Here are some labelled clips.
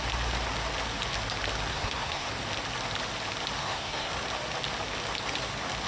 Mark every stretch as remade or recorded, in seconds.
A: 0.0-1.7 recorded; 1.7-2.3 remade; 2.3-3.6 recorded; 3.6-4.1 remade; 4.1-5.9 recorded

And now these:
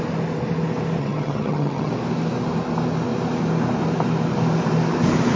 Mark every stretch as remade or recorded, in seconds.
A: 0.0-1.0 recorded; 1.0-1.9 remade; 1.9-5.4 recorded

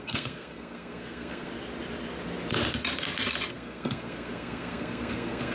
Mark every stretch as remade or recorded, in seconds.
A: 0.0-1.5 remade; 1.5-3.5 recorded; 3.5-5.5 remade

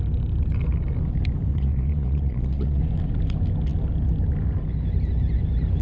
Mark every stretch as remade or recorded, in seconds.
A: 0.0-1.5 recorded; 1.5-2.8 remade; 2.8-5.8 recorded

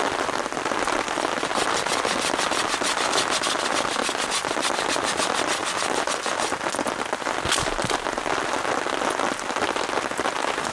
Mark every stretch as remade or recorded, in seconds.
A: 0.0-10.7 recorded

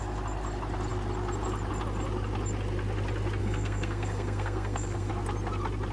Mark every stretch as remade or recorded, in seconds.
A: 0.0-3.4 recorded; 3.4-5.1 remade; 5.1-5.9 recorded

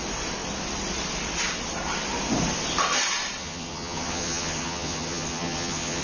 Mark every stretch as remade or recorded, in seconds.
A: 0.0-3.4 recorded; 3.4-6.0 remade